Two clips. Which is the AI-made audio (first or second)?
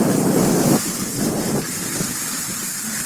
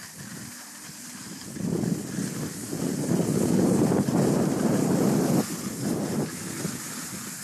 first